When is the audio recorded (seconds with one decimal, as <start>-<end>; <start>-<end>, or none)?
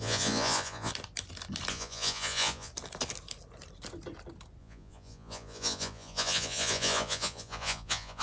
0.9-1.7; 2.7-4.6